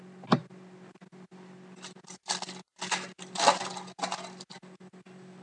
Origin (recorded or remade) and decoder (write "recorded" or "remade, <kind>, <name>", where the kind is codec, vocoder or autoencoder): recorded